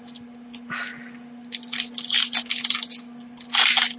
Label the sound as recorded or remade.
recorded